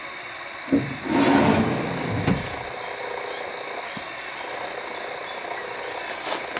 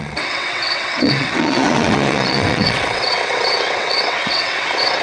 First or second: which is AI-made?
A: second